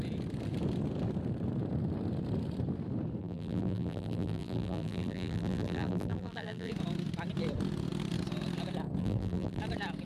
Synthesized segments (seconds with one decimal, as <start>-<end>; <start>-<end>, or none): 3.2-6.7; 9.0-9.6